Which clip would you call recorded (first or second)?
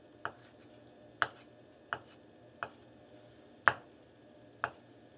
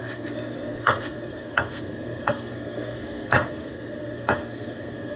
first